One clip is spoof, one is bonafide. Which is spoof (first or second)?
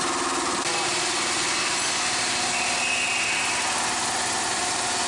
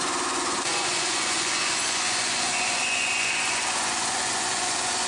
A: second